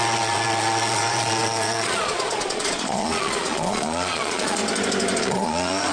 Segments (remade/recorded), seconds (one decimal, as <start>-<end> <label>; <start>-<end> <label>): 0.0-4.6 remade; 4.6-5.2 recorded; 5.2-5.9 remade